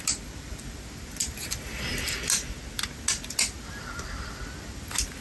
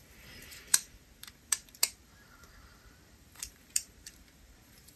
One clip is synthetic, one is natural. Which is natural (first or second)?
first